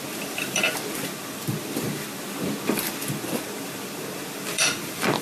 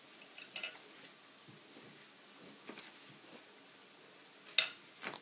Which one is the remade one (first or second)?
first